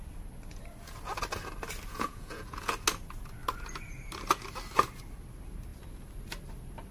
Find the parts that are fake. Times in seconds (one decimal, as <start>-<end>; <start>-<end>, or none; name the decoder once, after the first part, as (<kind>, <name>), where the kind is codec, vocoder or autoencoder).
1.9-2.7 (vocoder, Vocos)